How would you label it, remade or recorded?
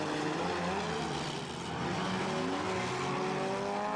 recorded